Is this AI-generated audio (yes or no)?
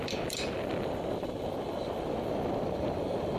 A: no